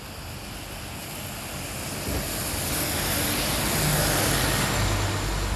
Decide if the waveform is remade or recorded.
recorded